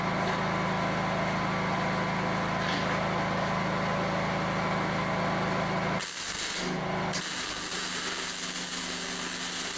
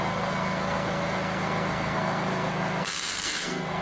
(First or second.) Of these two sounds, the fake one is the second